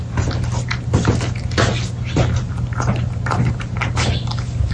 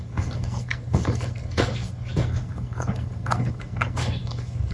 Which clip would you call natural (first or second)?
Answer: first